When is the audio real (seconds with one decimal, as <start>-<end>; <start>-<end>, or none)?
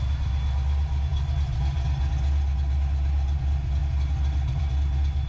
0.0-5.3